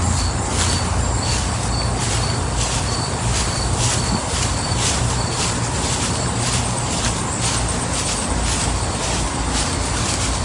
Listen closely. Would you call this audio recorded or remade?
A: recorded